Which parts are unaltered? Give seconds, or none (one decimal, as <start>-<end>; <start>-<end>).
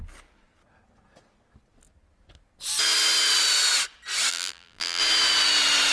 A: 0.0-4.3; 5.0-5.9